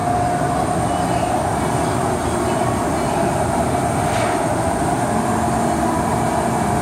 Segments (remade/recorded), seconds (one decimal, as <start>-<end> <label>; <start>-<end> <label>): 0.0-6.8 recorded